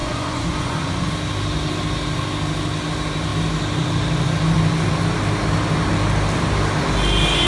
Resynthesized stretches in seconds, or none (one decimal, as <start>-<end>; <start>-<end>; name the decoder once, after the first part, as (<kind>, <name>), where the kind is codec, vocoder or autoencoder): 0.0-1.1 (vocoder, Vocos)